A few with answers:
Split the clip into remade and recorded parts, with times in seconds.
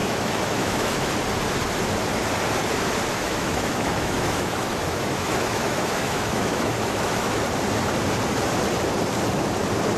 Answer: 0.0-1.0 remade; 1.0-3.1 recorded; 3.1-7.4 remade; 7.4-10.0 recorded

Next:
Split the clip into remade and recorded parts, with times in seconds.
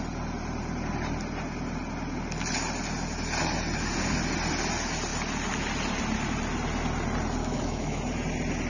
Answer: 0.0-7.4 recorded; 7.4-8.0 remade; 8.0-8.7 recorded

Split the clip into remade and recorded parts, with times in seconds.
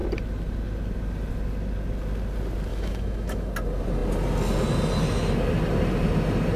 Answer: 0.0-2.7 recorded; 2.7-3.5 remade; 3.5-6.6 recorded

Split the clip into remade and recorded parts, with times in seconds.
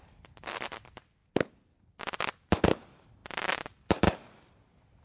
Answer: 0.0-5.0 recorded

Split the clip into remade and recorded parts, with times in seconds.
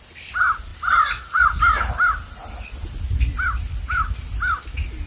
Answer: 0.0-5.1 recorded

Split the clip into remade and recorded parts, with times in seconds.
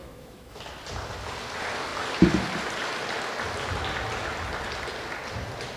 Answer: 0.0-0.6 remade; 0.6-5.8 recorded